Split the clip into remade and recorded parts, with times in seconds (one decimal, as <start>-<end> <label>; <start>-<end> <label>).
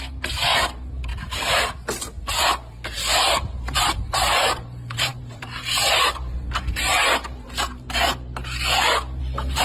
0.0-1.1 remade; 1.1-2.2 recorded; 2.2-8.4 remade; 8.4-9.2 recorded; 9.2-9.6 remade